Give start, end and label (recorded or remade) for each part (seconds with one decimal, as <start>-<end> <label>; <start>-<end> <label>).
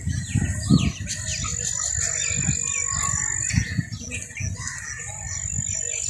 0.0-6.1 recorded